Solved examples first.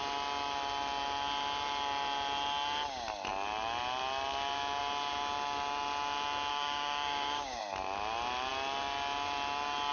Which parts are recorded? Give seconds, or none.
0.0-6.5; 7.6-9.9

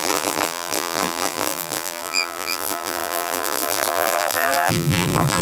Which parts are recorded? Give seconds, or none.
none

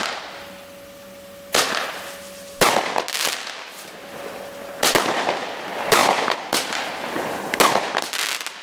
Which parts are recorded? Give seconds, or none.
0.0-8.6